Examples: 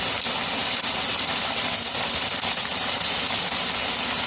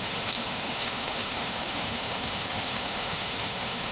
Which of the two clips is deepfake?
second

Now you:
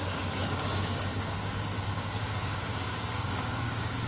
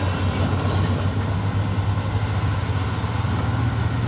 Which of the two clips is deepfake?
first